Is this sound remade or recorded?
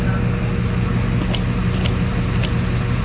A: recorded